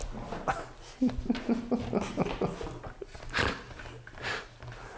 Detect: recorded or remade recorded